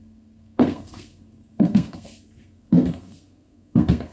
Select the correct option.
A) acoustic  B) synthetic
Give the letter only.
B